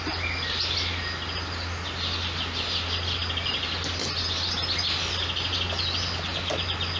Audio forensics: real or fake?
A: real